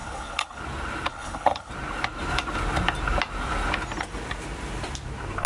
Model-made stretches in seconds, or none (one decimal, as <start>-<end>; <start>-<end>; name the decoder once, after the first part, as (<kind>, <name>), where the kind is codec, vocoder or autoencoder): 0.0-0.6 (codec, HILCodec); 1.1-1.7